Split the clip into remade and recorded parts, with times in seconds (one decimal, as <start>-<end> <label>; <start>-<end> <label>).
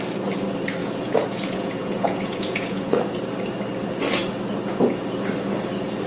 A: 0.0-0.8 recorded; 0.8-2.9 remade; 2.9-6.1 recorded